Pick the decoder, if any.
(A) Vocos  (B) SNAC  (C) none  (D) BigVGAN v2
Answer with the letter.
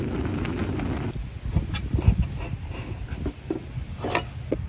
C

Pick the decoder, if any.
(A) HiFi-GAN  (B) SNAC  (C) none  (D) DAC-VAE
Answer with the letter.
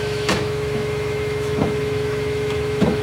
D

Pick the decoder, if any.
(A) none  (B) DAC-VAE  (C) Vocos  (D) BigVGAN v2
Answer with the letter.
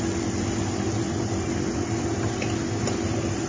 A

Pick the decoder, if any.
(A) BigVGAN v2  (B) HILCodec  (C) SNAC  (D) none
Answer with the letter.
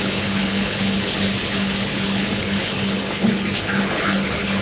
B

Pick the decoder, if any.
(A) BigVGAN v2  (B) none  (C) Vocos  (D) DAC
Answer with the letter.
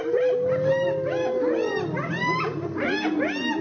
B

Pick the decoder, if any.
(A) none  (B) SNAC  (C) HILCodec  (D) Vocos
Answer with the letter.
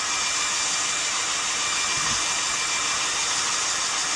A